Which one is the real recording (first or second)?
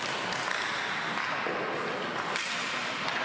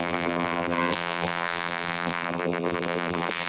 first